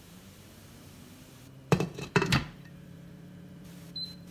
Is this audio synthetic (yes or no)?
yes